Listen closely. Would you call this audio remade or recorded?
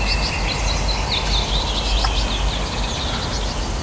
recorded